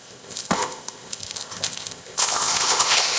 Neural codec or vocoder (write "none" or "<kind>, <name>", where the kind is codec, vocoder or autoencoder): codec, ZipCodec